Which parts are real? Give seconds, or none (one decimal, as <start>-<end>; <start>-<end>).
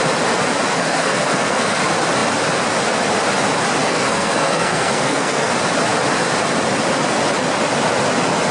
0.0-0.7; 1.8-3.8; 5.5-8.5